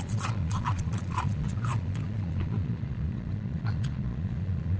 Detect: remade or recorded remade